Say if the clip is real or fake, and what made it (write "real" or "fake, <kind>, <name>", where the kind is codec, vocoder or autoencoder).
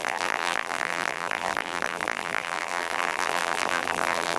fake, vocoder, BigVGAN v2